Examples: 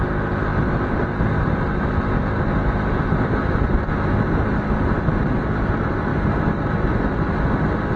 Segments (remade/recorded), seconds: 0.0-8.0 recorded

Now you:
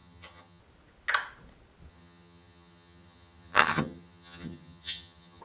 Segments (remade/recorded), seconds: 0.0-0.6 remade; 0.6-1.9 recorded; 1.9-5.4 remade

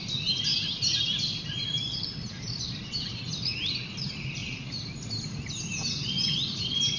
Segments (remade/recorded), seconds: 0.0-7.0 recorded